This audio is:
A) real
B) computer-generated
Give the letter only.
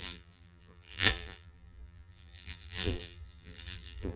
B